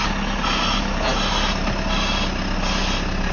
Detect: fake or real real